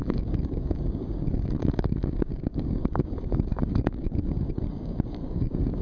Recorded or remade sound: remade